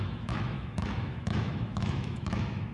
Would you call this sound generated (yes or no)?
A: yes